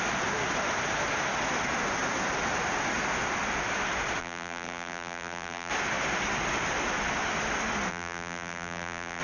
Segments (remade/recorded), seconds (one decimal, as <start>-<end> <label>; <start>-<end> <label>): 0.0-4.2 recorded; 4.2-5.7 remade; 5.7-7.9 recorded; 7.9-9.2 remade